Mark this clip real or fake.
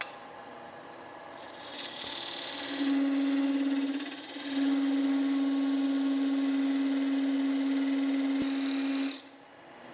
real